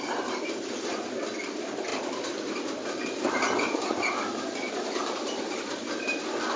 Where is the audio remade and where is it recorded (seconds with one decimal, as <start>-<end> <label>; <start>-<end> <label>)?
0.0-6.6 recorded